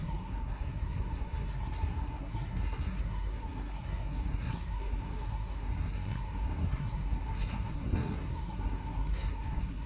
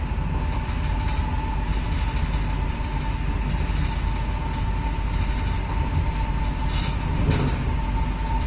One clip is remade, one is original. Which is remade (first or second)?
first